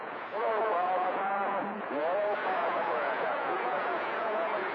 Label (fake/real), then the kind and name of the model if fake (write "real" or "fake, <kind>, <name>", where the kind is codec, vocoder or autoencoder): fake, vocoder, Vocos